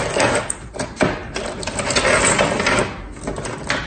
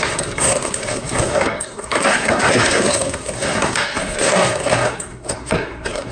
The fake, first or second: second